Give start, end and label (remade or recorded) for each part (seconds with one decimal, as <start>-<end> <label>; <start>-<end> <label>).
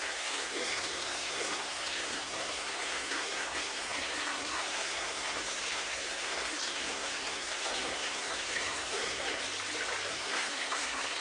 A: 0.0-9.4 remade; 9.4-10.1 recorded; 10.1-11.2 remade